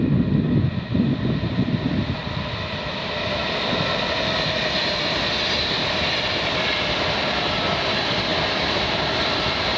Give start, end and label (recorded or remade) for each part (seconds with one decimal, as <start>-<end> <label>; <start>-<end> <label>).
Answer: 0.0-9.8 recorded